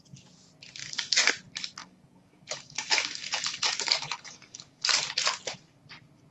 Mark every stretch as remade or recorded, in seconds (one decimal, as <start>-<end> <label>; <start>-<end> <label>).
0.0-0.8 recorded; 0.8-1.3 remade; 1.3-1.8 recorded; 1.8-5.0 remade; 5.0-6.3 recorded